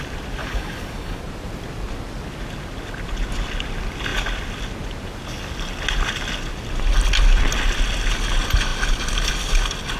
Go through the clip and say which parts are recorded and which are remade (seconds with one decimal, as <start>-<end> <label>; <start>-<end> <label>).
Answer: 0.0-0.4 recorded; 0.4-1.2 remade; 1.2-10.0 recorded